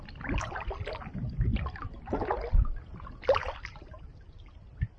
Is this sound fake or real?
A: real